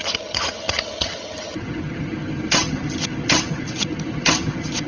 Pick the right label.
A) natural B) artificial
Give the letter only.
B